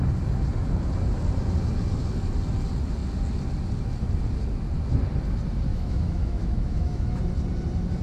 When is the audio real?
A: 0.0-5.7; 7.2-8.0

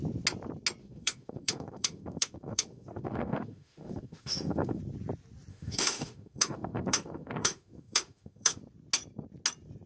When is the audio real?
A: 0.0-0.8; 4.8-5.5; 8.6-9.9

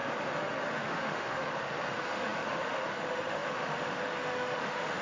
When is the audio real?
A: 1.4-1.9

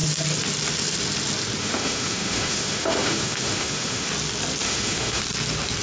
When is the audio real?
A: 0.0-1.6; 4.1-4.6; 5.2-5.8

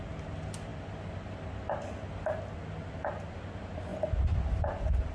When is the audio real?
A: 0.0-5.1